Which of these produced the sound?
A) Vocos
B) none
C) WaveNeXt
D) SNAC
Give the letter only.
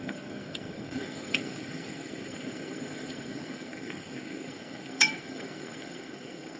D